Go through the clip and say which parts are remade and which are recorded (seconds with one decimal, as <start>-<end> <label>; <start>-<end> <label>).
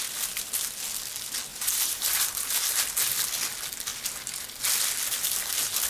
0.0-1.5 recorded; 1.5-2.5 remade; 2.5-5.9 recorded